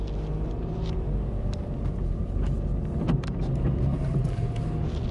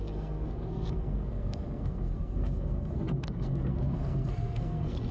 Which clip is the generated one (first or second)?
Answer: second